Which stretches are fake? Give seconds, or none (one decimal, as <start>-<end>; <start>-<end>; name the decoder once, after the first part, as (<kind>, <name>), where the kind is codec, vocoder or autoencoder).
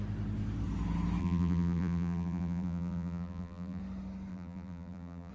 1.2-3.8 (vocoder, BigVGAN v2); 4.3-5.3